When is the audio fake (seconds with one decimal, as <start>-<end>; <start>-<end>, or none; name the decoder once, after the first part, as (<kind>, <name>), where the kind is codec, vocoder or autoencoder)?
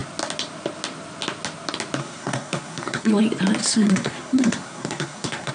2.0-3.1 (codec, SNAC); 3.6-5.5